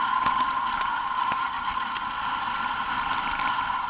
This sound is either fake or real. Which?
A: real